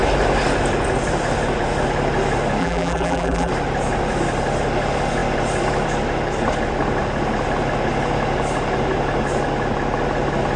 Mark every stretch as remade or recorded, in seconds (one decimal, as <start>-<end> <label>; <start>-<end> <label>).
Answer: 0.0-2.6 recorded; 2.6-3.5 remade; 3.5-10.6 recorded

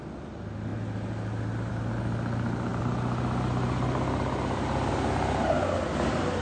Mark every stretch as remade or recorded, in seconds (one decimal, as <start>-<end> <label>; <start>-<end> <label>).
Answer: 0.0-6.4 recorded

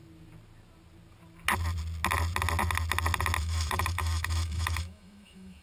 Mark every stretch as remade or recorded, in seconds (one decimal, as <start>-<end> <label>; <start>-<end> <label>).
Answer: 0.0-3.4 recorded; 3.4-5.6 remade

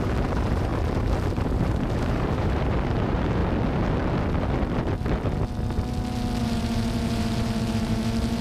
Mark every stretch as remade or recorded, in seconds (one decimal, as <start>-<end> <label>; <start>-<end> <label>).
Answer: 0.0-3.4 remade; 3.4-6.4 recorded; 6.4-8.4 remade